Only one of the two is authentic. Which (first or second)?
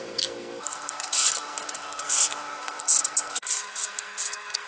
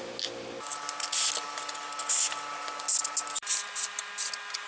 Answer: second